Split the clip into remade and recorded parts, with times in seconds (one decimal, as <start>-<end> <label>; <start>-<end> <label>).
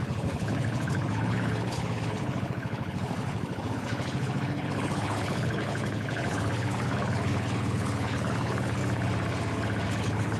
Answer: 0.0-8.8 remade; 8.8-10.0 recorded; 10.0-10.4 remade